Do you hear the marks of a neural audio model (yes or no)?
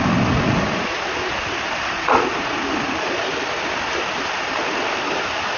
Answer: yes